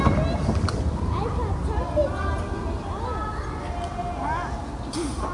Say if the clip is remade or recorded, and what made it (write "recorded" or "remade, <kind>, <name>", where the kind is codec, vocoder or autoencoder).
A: recorded